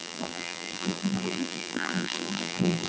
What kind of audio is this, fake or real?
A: fake